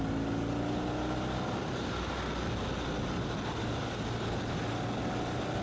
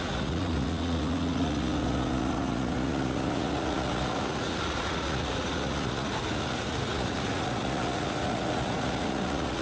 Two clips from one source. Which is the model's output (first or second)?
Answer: second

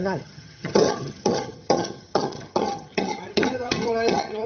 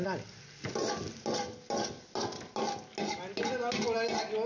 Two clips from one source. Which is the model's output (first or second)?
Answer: first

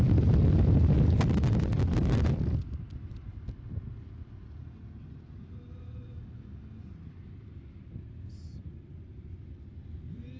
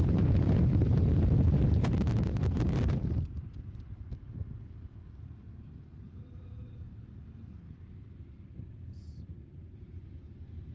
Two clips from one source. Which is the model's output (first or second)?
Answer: second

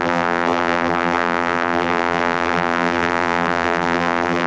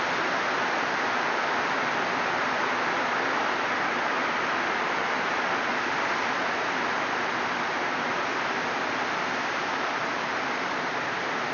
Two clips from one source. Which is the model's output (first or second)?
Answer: first